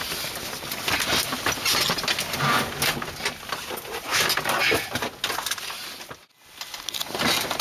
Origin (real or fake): real